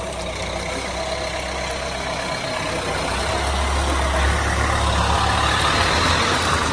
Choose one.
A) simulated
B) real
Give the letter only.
B